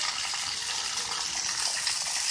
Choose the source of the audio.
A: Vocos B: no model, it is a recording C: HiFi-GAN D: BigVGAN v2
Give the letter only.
B